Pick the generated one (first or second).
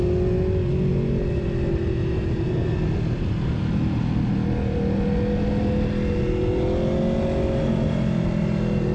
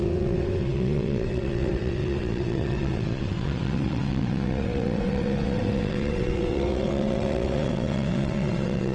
second